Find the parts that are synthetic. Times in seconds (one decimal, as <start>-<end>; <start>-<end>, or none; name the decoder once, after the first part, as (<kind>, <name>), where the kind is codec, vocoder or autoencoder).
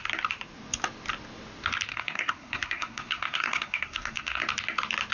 1.9-4.4 (codec, SNAC)